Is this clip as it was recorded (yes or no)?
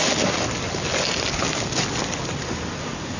yes